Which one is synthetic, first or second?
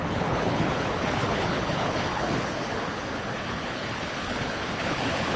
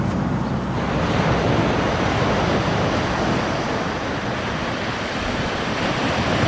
first